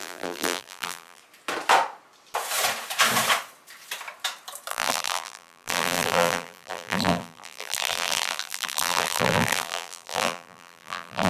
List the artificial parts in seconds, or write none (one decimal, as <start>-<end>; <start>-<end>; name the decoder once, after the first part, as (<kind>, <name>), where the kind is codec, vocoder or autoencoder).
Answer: 0.0-1.2 (vocoder, BigVGAN v2); 4.7-11.3